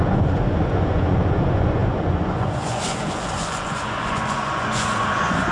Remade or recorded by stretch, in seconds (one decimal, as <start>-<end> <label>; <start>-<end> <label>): 0.0-5.5 remade